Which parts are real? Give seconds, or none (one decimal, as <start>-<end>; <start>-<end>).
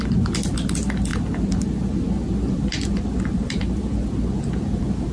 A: 0.0-5.1